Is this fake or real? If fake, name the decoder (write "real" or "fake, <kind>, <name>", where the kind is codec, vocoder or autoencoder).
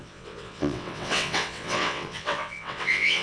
fake, vocoder, WaveNeXt